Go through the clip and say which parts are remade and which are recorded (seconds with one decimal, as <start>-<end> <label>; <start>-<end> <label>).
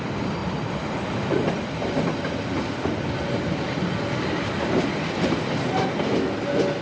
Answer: 0.0-6.8 recorded